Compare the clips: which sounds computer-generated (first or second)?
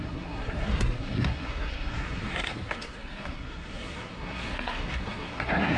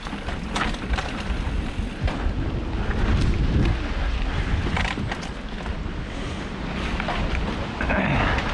first